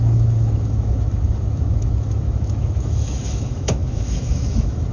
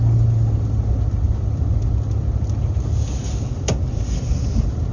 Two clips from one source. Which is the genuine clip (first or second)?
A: second